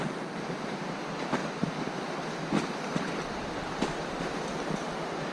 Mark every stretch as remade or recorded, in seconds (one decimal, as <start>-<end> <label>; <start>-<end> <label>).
0.0-5.3 recorded